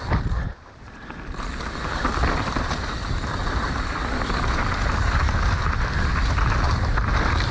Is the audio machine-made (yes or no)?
no